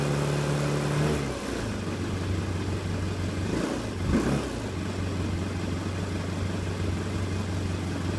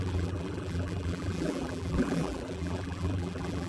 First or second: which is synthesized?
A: second